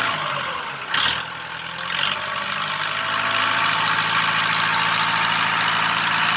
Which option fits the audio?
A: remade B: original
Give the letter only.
B